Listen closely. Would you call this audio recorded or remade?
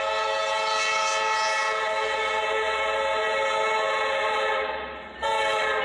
recorded